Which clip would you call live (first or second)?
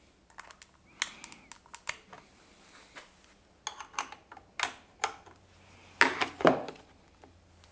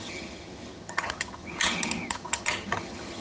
first